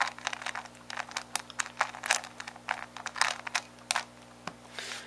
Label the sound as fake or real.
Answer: real